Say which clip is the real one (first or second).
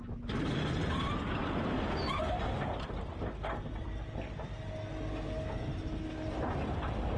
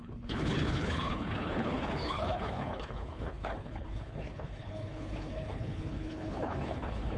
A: first